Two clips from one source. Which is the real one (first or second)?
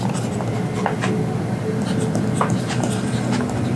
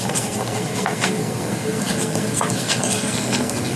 first